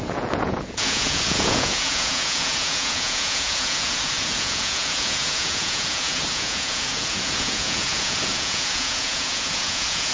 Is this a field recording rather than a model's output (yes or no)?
no